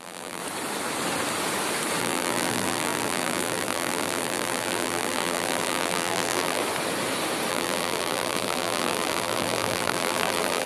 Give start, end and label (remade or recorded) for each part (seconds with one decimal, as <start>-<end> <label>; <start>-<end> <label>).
0.0-0.4 remade; 0.4-2.0 recorded; 2.0-6.6 remade; 6.6-7.5 recorded; 7.5-10.7 remade